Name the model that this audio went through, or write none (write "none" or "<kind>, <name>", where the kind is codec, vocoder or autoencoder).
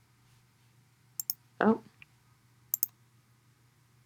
none